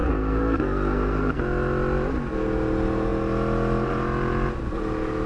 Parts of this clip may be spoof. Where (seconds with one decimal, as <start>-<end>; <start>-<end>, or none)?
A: 0.0-1.4